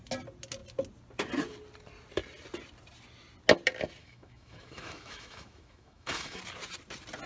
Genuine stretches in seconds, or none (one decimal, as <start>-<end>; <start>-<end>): 0.0-4.0; 6.4-7.3